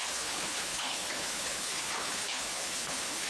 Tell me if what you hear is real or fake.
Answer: fake